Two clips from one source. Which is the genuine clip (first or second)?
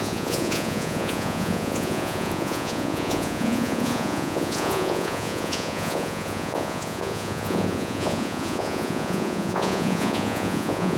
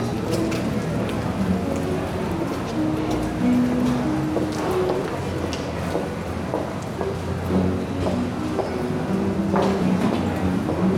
second